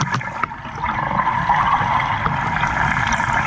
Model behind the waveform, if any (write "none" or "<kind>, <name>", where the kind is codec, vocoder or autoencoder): none